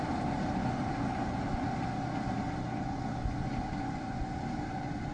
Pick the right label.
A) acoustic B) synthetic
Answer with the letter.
A